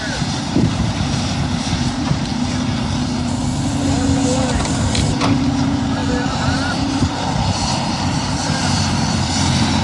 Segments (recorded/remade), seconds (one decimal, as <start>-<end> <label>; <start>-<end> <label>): 0.0-2.3 remade; 2.3-5.0 recorded; 5.0-6.0 remade; 6.0-6.7 recorded; 6.7-9.8 remade